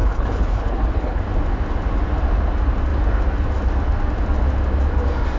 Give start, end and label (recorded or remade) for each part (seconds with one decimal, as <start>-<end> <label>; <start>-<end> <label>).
0.0-1.2 remade; 1.2-5.4 recorded

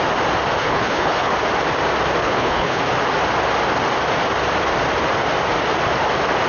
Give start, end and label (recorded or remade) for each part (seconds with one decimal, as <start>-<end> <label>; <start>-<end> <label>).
0.0-0.6 recorded; 0.6-1.3 remade; 1.3-2.2 recorded; 2.2-2.8 remade; 2.8-6.5 recorded

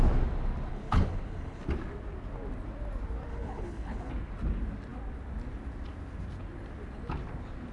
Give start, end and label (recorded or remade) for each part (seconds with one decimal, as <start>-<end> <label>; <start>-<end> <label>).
0.0-0.7 recorded; 0.7-1.6 remade; 1.6-3.3 recorded; 3.3-4.1 remade; 4.1-7.7 recorded